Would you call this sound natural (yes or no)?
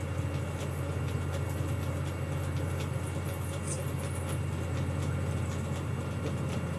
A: yes